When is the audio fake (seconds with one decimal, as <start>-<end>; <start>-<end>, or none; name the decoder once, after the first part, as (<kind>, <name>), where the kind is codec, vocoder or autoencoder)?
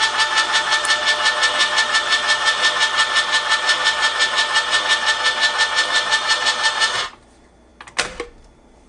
0.0-1.0 (vocoder, BigVGAN v2); 1.9-7.7; 8.4-8.9